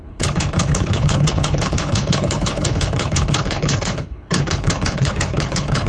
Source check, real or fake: fake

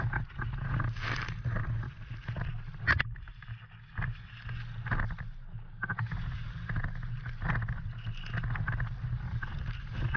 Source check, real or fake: real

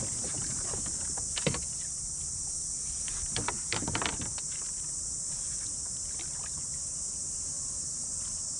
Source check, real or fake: fake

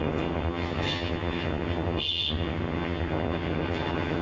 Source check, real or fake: fake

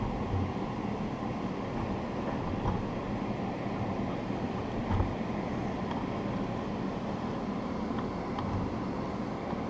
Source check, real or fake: real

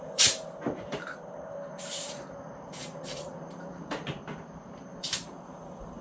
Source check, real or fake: fake